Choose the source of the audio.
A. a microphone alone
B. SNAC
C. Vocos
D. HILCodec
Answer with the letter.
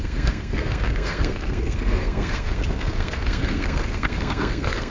B